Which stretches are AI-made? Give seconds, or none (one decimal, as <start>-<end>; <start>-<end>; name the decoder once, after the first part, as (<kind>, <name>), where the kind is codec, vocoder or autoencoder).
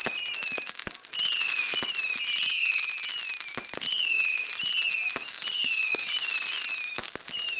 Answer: none